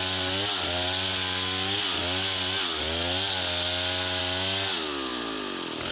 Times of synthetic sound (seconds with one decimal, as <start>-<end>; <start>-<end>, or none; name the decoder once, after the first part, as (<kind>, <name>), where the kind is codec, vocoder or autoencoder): none